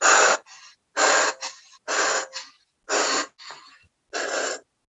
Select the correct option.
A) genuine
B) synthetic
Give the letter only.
A